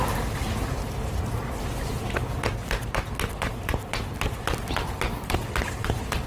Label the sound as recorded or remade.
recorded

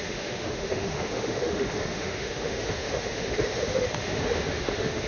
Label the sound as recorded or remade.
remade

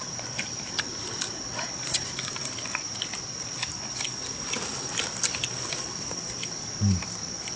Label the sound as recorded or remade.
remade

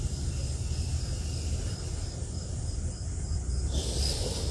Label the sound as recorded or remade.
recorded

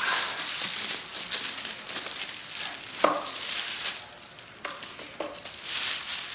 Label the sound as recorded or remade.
recorded